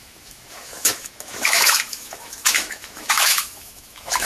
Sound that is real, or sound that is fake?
fake